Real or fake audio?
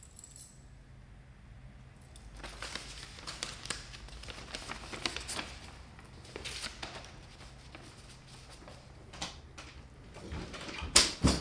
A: real